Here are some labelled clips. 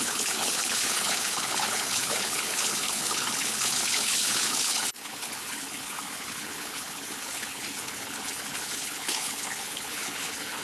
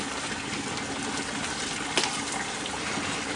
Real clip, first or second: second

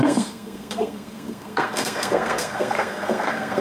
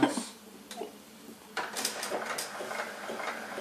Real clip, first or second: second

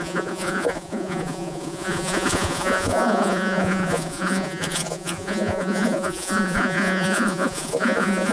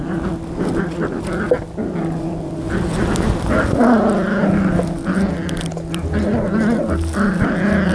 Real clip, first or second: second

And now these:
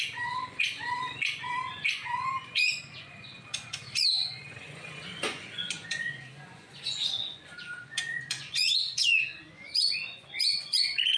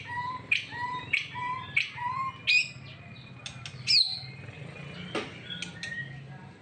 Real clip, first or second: second